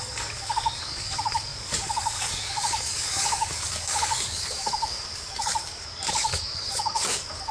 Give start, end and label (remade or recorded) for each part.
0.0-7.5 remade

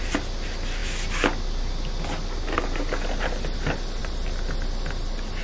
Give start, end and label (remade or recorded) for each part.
0.0-5.4 recorded